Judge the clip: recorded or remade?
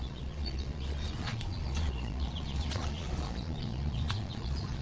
remade